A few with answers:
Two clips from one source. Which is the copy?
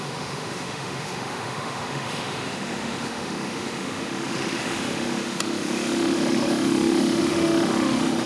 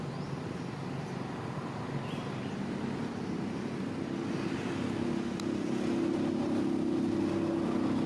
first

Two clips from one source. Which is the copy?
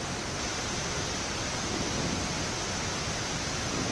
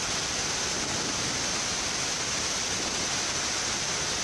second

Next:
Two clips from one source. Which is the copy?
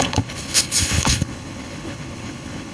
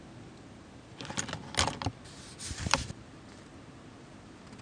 first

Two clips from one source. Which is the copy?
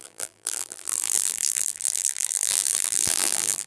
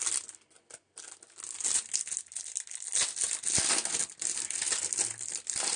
first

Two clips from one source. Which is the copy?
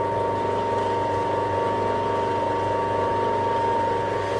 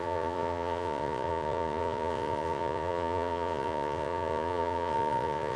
second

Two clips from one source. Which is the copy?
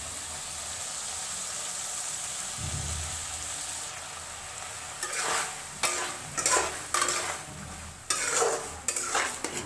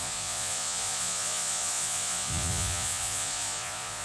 second